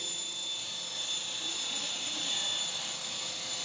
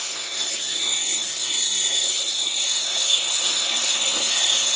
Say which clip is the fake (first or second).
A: second